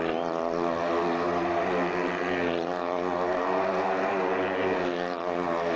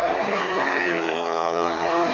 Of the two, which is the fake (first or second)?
second